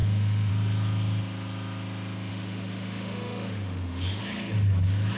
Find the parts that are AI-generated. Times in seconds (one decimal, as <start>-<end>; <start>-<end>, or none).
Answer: 0.0-0.5; 2.3-4.2